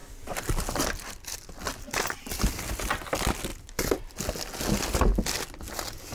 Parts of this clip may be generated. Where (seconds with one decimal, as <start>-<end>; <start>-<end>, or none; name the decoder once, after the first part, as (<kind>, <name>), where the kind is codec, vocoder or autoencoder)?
none